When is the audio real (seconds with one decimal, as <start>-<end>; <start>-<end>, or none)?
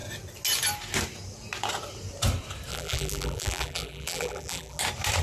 0.0-2.7; 4.8-5.2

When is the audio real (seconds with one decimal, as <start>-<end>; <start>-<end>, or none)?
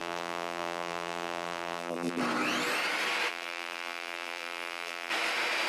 2.2-3.3; 5.1-5.7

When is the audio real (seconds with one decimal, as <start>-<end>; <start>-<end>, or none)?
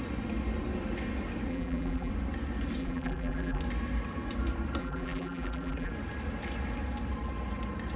0.0-1.5; 2.1-2.8; 3.6-4.8; 5.9-8.0